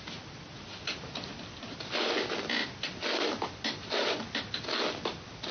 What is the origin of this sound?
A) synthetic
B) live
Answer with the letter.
B